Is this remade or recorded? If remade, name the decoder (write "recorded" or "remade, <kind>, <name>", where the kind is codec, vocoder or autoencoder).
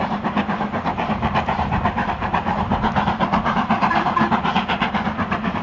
remade, vocoder, BigVGAN v2